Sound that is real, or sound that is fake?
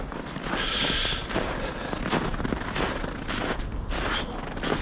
real